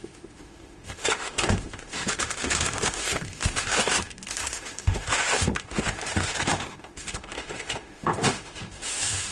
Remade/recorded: remade